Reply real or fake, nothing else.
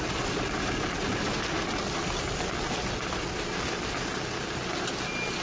real